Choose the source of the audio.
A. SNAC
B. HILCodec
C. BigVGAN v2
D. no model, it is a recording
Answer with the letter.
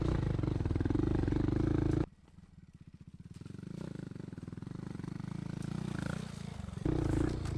D